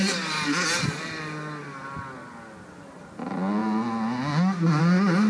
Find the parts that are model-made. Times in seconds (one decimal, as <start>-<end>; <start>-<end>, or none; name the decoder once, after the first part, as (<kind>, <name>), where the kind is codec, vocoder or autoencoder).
none